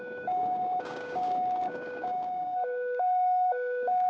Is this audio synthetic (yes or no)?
yes